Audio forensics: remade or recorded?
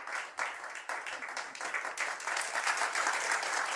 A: recorded